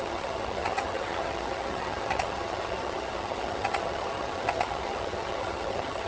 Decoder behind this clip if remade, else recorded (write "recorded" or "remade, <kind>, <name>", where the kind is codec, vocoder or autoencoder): remade, vocoder, HiFi-GAN